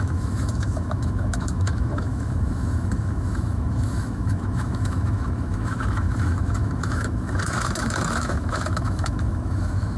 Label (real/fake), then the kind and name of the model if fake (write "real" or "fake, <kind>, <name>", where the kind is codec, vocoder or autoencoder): fake, autoencoder, DAC-VAE